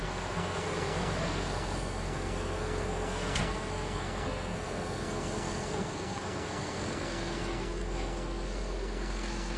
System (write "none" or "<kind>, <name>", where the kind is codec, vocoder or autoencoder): codec, SNAC